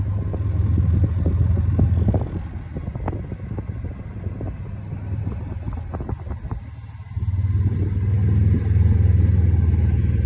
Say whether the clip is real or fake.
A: real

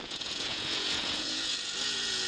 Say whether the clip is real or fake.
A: fake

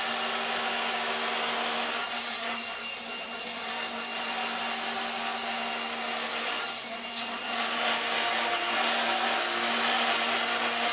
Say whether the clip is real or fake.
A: real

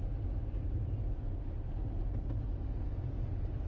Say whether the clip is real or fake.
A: real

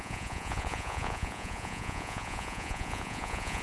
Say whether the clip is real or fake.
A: fake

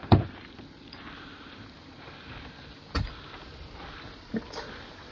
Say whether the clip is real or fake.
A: real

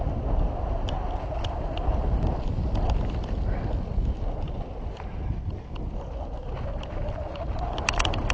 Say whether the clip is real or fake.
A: real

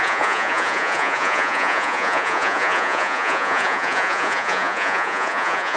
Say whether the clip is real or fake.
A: fake